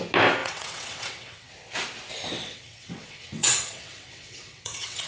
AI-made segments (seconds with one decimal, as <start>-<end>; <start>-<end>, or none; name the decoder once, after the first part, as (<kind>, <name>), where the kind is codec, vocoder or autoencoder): 0.4-1.5 (vocoder, WaveNeXt); 2.4-5.1